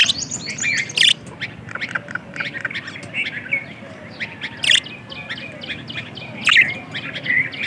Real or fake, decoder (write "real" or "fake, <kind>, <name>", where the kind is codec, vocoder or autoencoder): real